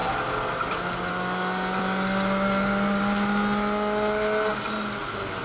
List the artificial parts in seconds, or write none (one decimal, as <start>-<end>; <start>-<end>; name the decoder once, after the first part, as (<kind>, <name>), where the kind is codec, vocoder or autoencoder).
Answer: none